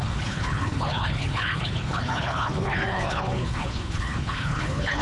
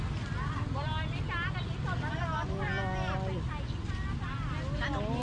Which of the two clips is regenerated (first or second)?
first